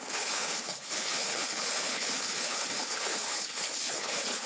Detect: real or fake fake